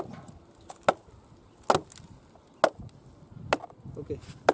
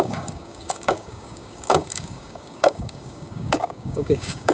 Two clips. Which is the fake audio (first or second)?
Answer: second